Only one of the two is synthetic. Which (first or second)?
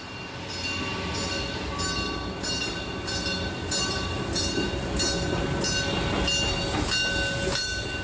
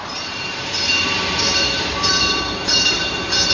second